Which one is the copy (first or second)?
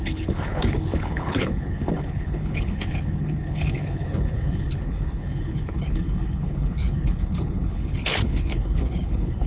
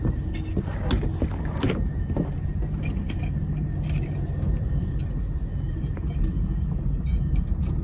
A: first